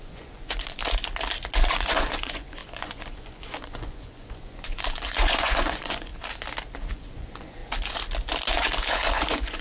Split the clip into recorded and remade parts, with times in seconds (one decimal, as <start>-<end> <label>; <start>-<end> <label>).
0.0-0.8 remade; 0.8-1.7 recorded; 1.7-6.1 remade; 6.1-6.9 recorded; 6.9-7.6 remade; 7.6-8.9 recorded; 8.9-9.6 remade